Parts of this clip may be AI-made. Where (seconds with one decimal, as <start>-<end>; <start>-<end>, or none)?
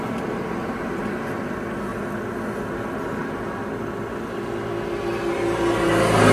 none